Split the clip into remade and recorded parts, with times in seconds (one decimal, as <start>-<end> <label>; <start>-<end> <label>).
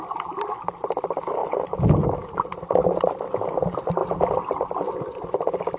0.0-5.8 recorded